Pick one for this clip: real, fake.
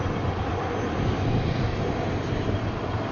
real